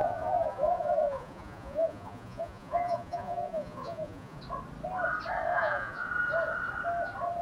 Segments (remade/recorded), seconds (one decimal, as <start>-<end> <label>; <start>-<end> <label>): 0.0-4.4 remade; 4.4-5.5 recorded; 5.5-6.1 remade; 6.1-7.4 recorded